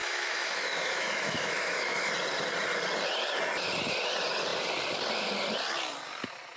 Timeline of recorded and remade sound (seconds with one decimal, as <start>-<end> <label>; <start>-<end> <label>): 0.0-2.1 remade; 2.1-6.6 recorded